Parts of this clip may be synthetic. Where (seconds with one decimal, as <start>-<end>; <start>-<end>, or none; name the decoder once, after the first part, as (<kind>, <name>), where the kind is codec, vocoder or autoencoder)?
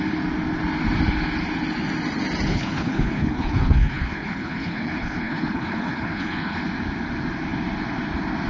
2.5-6.6 (codec, HILCodec)